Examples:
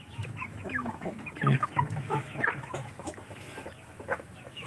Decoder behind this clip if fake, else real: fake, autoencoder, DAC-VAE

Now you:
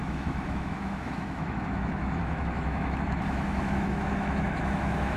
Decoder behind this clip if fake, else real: fake, autoencoder, DAC-VAE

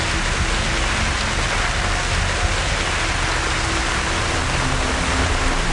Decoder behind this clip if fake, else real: real